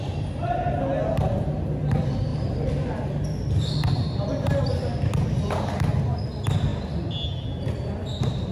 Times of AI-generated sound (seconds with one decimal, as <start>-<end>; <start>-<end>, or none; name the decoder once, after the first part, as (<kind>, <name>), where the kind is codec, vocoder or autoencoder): 2.3-4.6 (vocoder, BigVGAN v2)